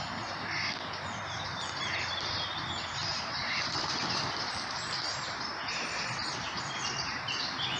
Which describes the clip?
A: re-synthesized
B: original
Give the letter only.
A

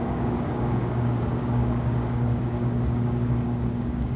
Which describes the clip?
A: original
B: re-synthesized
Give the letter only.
B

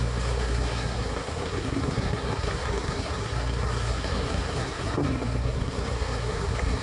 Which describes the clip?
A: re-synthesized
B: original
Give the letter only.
A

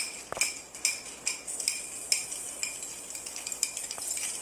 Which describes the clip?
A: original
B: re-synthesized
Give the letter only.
A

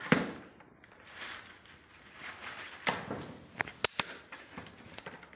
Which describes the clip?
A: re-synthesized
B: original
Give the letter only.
B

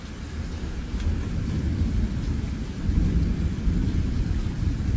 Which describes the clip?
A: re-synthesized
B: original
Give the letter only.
B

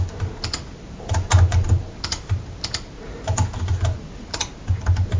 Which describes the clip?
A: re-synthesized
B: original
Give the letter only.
B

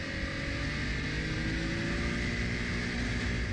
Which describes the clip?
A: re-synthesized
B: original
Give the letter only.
B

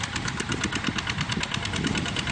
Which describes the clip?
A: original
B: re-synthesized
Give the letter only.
A